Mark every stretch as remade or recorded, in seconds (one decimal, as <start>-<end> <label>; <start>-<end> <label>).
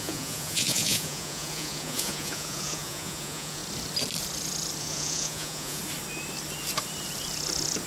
0.0-3.6 remade; 3.6-4.8 recorded; 4.8-5.8 remade; 5.8-7.9 recorded